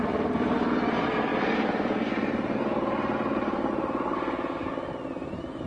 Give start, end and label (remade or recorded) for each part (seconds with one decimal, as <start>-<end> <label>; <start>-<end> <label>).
0.0-1.3 recorded; 1.3-3.7 remade; 3.7-5.7 recorded